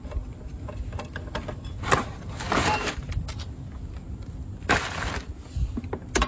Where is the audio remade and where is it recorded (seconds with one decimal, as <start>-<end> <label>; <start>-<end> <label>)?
0.0-2.6 recorded; 2.6-3.1 remade; 3.1-6.3 recorded